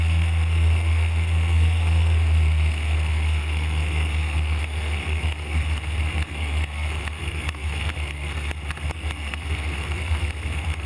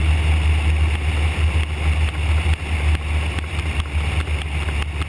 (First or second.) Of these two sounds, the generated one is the first